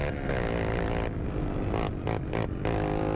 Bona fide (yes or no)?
yes